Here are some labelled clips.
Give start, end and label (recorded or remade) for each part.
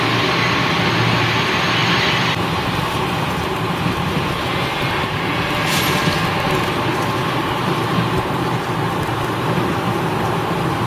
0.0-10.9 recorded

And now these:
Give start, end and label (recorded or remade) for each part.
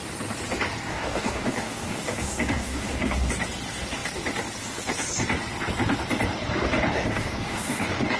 0.0-0.9 recorded; 0.9-3.3 remade; 3.3-6.9 recorded; 6.9-8.2 remade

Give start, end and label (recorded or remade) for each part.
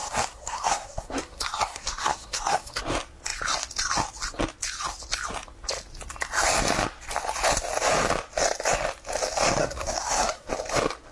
0.0-2.8 remade; 2.8-9.6 recorded; 9.6-10.5 remade; 10.5-11.1 recorded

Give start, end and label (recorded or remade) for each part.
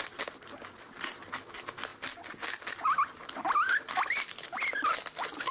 0.0-5.5 recorded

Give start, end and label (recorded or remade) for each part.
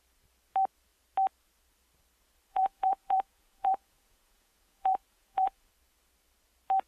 0.0-2.5 recorded; 2.5-5.7 remade; 5.7-6.9 recorded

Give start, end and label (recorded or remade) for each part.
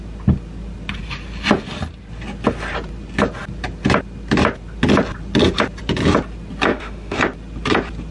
0.0-6.7 recorded; 6.7-7.2 remade; 7.2-8.1 recorded